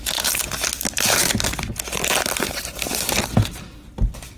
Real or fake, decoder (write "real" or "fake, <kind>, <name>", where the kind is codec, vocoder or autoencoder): real